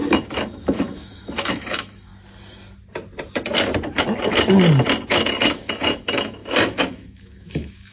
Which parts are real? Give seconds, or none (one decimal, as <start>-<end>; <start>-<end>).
2.1-5.1